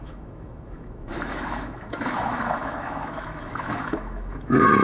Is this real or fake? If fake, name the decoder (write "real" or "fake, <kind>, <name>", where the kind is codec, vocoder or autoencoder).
fake, autoencoder, DAC-VAE